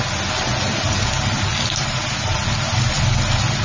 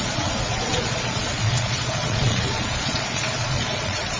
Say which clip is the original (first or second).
first